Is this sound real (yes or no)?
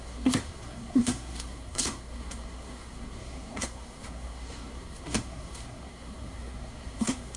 no